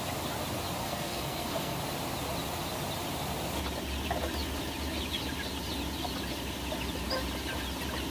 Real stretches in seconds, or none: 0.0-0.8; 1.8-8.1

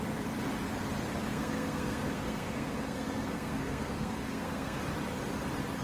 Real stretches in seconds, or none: 0.0-1.3; 4.8-5.8

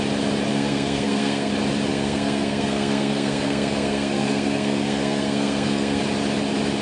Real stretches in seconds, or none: 0.0-0.5; 1.5-1.9; 6.0-6.8

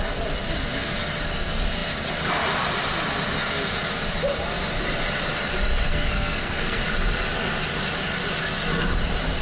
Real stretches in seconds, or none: 0.0-5.9; 6.8-9.4

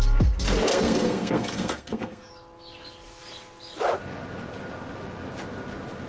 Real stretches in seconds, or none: 0.0-0.7; 2.3-6.1

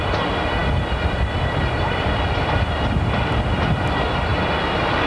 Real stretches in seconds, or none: 0.0-5.1